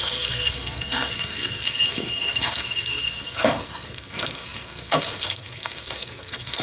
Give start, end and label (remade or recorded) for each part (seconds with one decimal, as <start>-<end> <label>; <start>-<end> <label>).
0.0-6.6 remade